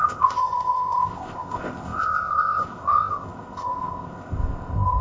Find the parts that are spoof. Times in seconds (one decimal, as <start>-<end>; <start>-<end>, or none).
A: 0.0-5.0

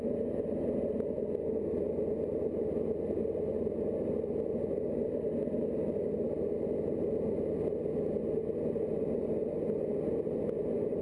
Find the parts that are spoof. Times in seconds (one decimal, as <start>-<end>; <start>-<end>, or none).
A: none